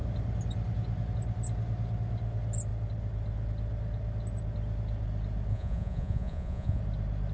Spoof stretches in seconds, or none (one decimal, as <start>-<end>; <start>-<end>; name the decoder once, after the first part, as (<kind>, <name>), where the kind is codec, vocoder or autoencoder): 5.5-6.8 (vocoder, Vocos)